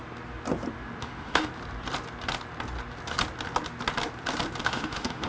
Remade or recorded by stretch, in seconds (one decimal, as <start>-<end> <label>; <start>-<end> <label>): 0.0-1.0 recorded; 1.0-1.5 remade; 1.5-4.6 recorded; 4.6-5.3 remade